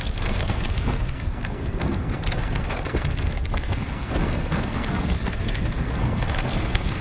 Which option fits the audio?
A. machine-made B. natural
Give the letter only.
A